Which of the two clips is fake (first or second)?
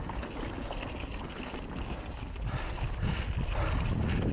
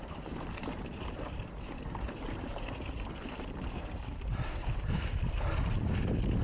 second